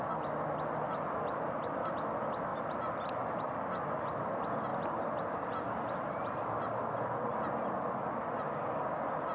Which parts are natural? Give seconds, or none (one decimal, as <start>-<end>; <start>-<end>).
0.0-9.3